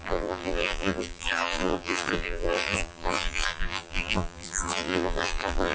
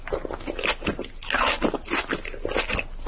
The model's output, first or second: first